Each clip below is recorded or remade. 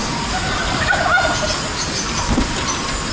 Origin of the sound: recorded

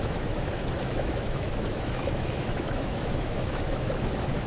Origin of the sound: remade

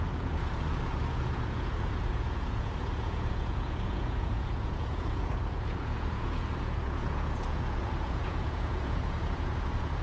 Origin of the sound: remade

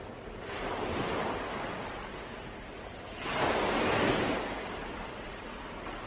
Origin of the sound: recorded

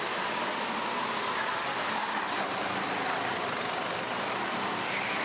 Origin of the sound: recorded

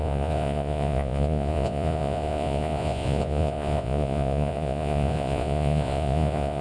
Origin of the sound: remade